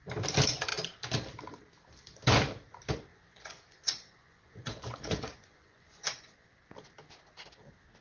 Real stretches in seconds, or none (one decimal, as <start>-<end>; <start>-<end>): 0.0-3.1; 6.5-8.0